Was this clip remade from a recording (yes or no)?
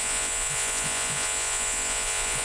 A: yes